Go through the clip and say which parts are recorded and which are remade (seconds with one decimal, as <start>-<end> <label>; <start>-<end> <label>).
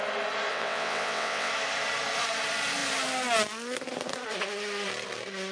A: 0.0-0.5 recorded; 0.5-1.5 remade; 1.5-5.5 recorded